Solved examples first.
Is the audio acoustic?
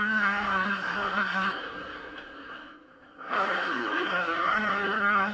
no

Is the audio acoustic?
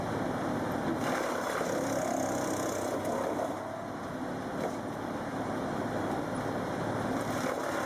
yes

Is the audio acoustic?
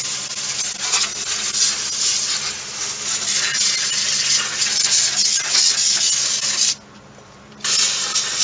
yes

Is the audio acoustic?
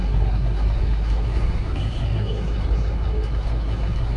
no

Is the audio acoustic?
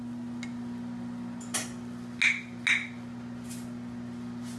yes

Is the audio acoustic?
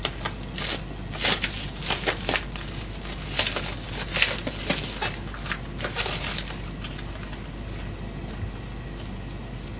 yes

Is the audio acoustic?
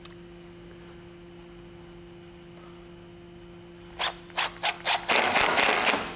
yes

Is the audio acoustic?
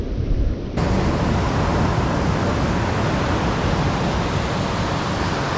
yes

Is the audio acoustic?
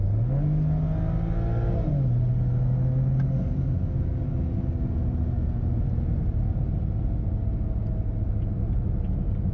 yes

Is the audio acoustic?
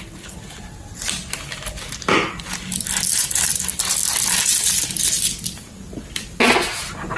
yes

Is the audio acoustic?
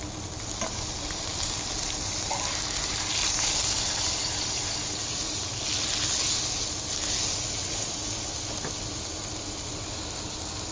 yes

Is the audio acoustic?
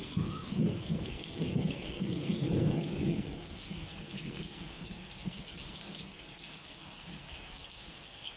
no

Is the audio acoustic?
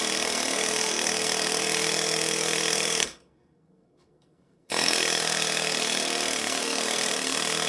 no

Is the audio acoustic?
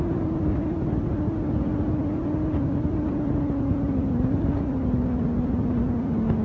yes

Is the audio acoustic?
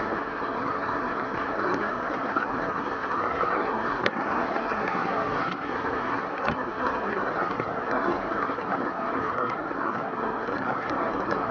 no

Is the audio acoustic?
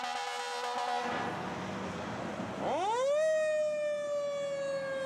yes